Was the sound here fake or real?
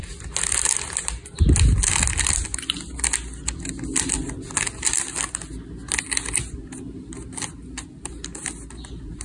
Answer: real